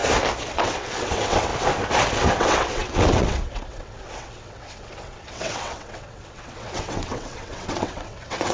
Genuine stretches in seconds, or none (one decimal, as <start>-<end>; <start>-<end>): 0.0-0.5; 1.5-2.4